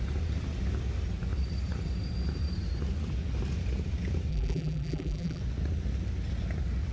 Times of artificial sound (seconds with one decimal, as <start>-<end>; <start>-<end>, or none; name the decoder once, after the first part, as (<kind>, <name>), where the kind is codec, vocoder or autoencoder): 4.3-5.4 (vocoder, BigVGAN v2)